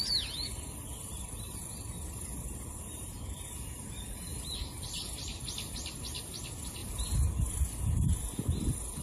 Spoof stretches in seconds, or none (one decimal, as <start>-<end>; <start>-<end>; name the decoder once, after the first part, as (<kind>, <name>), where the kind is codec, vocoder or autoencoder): none